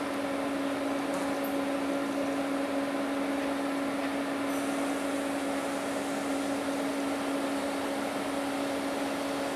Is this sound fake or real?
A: real